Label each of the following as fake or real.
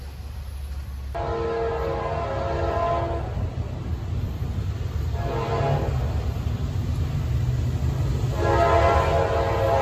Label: real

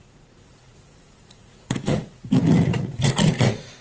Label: fake